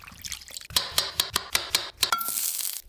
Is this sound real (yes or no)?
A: yes